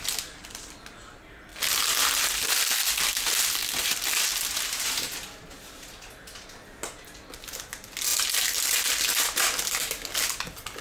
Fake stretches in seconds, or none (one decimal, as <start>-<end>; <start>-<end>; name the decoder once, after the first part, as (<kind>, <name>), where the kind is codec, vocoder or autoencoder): none